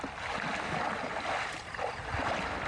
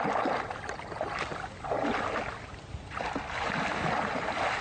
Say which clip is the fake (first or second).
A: first